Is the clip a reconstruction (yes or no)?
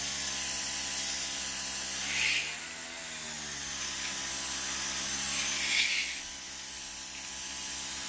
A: no